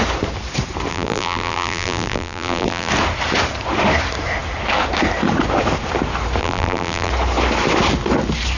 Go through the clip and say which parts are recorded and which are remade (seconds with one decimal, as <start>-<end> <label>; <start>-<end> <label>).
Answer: 0.0-0.9 recorded; 0.9-2.9 remade; 2.9-6.4 recorded; 6.4-7.1 remade; 7.1-8.6 recorded